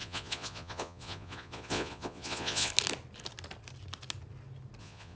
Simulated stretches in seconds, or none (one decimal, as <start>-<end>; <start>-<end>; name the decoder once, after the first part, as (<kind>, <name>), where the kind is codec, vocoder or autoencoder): 0.0-2.7 (vocoder, Vocos); 4.8-5.2